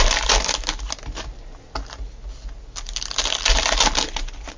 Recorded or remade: recorded